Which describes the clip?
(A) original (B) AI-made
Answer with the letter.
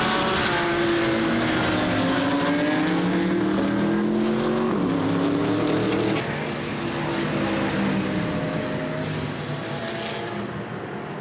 A